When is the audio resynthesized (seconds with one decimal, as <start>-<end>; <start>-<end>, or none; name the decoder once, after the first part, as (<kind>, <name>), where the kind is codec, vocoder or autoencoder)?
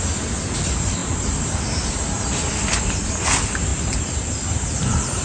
none